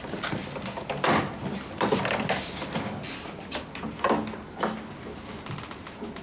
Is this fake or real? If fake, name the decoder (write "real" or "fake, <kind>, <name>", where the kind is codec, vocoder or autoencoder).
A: real